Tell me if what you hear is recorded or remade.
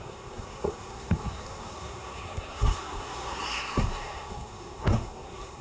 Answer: remade